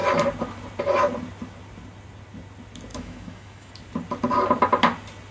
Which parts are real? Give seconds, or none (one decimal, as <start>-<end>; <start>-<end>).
0.0-2.9; 3.7-5.3